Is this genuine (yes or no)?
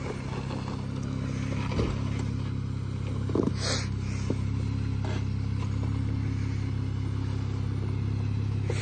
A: yes